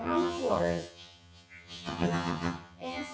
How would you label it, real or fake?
fake